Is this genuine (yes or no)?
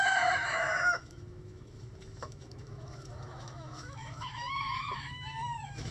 no